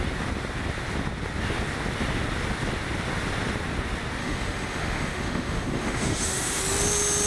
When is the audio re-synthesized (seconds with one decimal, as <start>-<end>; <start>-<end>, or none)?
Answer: 4.2-6.6